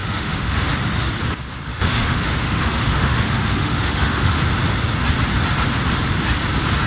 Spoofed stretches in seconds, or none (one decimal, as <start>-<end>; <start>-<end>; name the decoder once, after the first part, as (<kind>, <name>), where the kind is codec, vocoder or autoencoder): 0.0-0.7 (autoencoder, DAC-VAE); 1.7-4.4